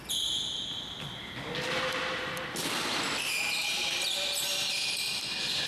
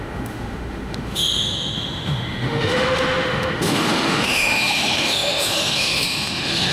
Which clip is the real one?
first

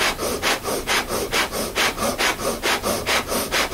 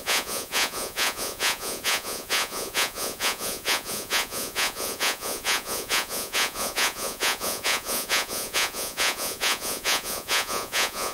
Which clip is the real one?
first